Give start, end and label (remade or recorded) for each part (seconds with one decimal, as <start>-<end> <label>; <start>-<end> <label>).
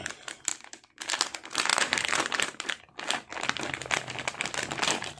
0.0-1.7 recorded; 1.7-2.8 remade; 2.8-5.2 recorded